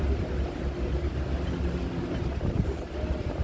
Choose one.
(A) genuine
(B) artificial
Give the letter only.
A